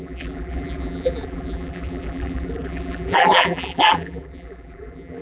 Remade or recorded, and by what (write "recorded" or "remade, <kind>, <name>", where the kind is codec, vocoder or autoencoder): remade, vocoder, BigVGAN v2